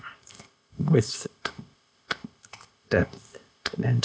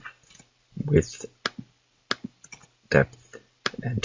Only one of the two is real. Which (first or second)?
second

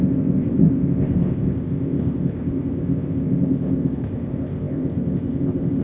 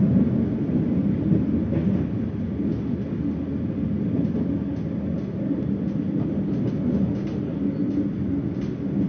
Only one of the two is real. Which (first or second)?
second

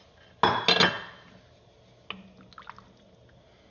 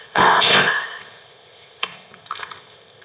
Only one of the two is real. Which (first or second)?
first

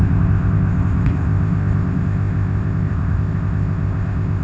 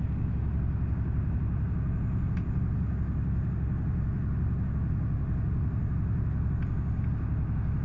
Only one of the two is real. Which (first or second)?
second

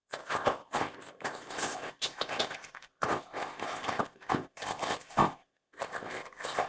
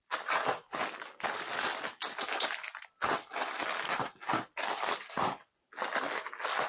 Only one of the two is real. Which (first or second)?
second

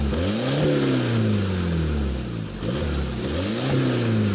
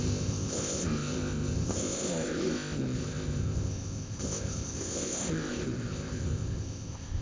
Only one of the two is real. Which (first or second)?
first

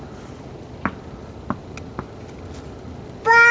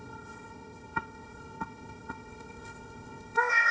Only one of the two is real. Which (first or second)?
first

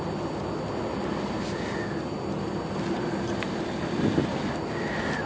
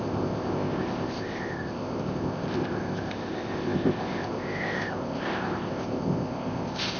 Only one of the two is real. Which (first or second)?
first